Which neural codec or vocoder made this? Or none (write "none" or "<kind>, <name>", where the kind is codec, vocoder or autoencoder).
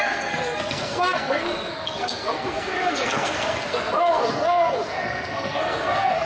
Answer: codec, SNAC